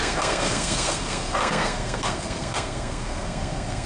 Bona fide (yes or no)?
no